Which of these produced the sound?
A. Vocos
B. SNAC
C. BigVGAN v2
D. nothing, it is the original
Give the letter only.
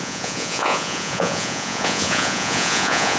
A